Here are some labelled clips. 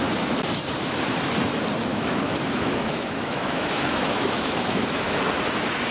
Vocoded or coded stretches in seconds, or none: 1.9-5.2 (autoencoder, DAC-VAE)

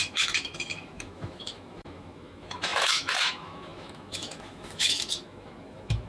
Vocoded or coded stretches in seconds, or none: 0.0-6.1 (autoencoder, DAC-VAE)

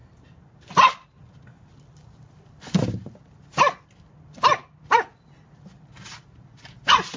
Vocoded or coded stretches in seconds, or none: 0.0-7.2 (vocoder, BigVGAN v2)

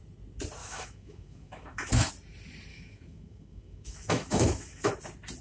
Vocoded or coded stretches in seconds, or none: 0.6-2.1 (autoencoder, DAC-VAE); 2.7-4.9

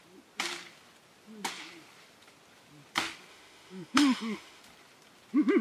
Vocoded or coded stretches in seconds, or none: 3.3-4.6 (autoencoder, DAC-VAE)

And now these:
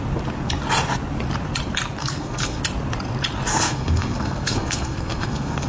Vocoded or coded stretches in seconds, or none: 2.0-2.6 (codec, SNAC); 3.5-5.7

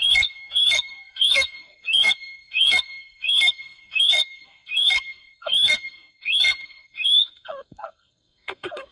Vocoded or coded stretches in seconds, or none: 0.0-8.9 (codec, SNAC)